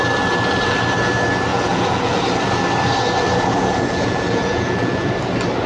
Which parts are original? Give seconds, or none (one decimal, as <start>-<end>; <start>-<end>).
0.0-1.5; 2.2-3.5; 5.1-5.7